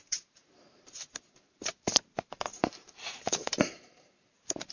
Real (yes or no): no